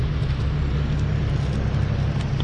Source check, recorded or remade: recorded